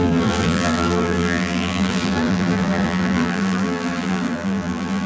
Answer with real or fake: fake